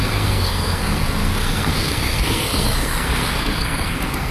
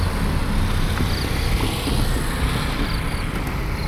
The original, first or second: second